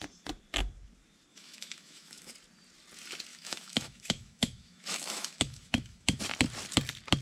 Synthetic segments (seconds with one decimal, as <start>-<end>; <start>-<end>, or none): 1.3-2.3; 3.3-6.2